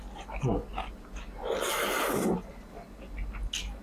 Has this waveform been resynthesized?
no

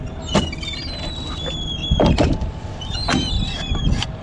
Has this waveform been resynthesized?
no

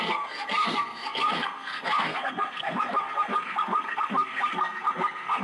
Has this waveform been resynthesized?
yes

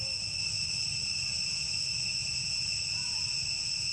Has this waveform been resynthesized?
no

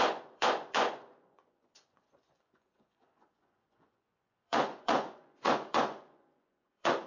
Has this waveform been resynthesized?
yes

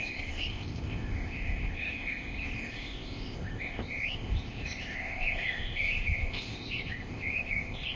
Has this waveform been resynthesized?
yes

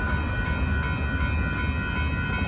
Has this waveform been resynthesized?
no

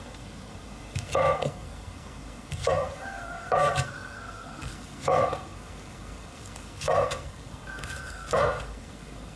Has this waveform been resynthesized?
yes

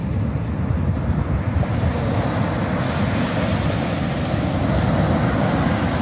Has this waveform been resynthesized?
no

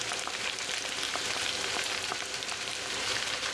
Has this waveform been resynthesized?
yes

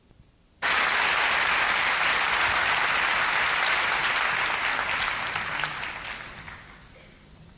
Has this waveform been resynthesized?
no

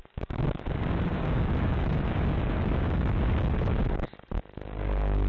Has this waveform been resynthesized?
yes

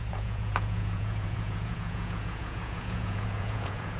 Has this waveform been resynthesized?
yes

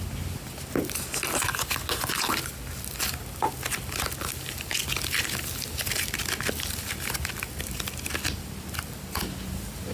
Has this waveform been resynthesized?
no